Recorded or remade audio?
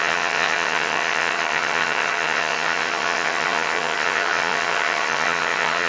remade